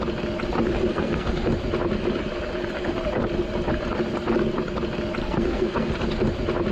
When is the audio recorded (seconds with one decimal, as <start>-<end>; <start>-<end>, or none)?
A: 0.0-0.9; 1.5-5.2; 5.9-6.7